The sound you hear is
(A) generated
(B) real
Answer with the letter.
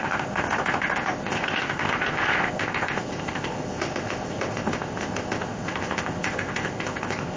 A